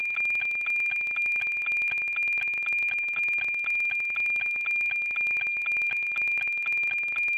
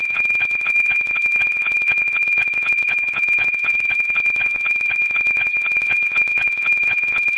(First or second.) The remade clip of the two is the second